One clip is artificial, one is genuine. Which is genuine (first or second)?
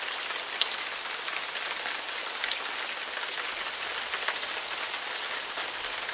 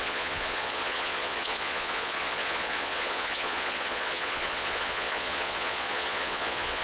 first